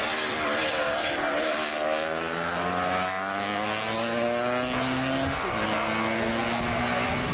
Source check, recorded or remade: recorded